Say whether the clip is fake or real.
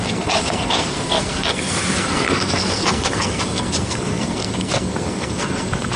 fake